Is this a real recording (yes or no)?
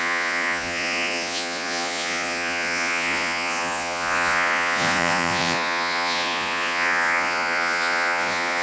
no